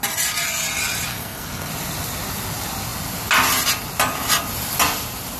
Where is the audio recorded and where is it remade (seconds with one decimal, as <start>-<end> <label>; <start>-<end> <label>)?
0.0-1.1 recorded; 1.1-1.7 remade; 1.7-5.4 recorded